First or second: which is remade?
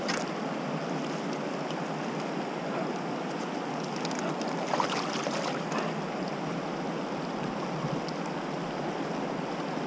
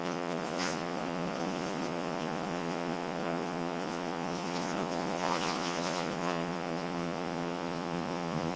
second